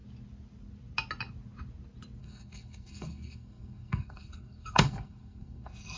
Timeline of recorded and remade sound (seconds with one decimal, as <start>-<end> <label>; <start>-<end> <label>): 0.0-2.2 recorded; 2.2-6.0 remade